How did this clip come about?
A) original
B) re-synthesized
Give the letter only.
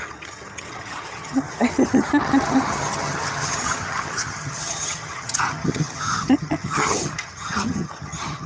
B